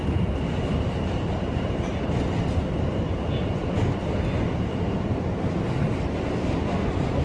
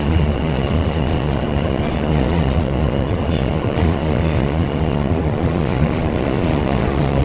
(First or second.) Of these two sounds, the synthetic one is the second